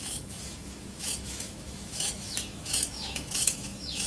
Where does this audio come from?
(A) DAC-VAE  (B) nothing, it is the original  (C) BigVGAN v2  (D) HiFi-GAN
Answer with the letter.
A